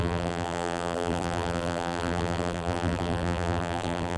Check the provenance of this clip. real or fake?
fake